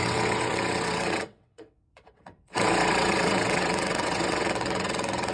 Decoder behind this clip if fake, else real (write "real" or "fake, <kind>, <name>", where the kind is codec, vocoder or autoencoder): fake, vocoder, WaveNeXt